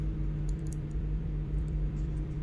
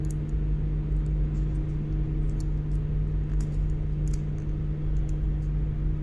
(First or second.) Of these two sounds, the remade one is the first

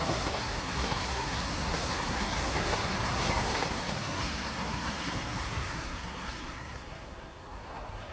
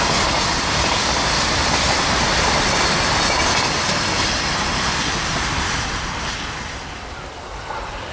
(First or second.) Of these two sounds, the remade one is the first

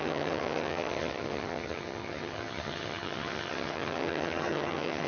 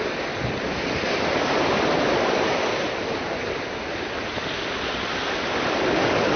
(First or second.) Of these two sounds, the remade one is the first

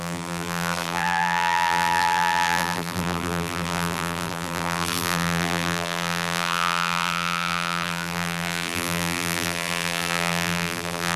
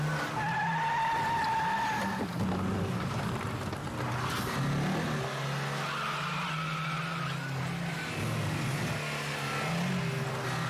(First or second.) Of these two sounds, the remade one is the first